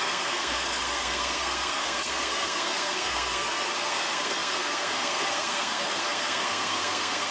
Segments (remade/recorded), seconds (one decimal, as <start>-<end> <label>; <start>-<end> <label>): 0.0-7.3 remade